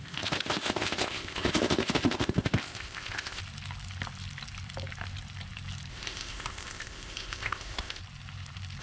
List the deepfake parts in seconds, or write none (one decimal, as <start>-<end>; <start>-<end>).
0.0-3.4; 5.9-8.0